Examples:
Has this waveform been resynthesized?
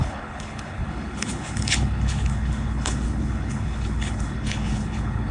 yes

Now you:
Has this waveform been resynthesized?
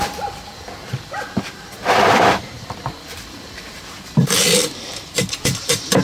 yes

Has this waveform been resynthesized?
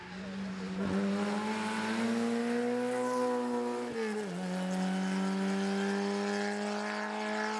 no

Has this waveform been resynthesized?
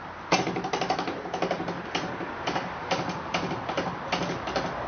no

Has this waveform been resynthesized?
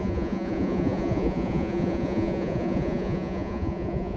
yes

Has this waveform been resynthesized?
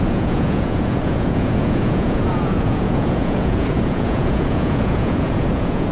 yes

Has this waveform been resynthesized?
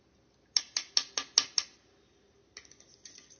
no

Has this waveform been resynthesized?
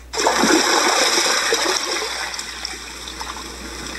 no